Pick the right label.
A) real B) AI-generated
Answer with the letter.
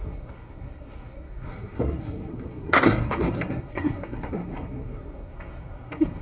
B